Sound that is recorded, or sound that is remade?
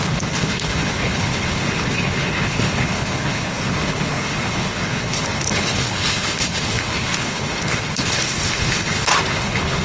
remade